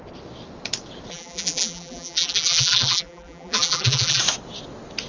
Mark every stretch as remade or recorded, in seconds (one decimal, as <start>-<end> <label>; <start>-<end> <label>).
0.0-1.1 recorded; 1.1-4.2 remade; 4.2-5.1 recorded